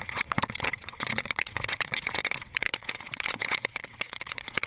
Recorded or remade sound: remade